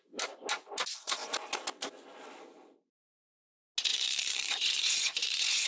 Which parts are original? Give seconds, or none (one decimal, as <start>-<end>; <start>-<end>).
0.0-3.9